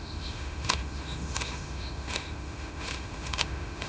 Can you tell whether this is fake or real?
fake